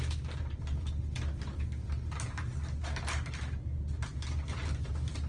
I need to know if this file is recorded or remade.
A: recorded